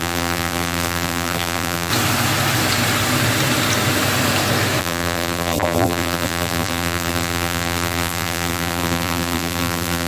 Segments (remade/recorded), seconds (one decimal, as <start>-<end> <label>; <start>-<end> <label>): 0.0-1.9 remade; 1.9-4.8 recorded; 4.8-10.1 remade